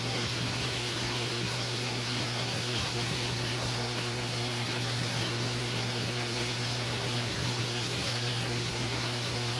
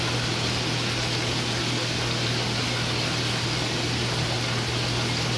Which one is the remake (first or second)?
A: first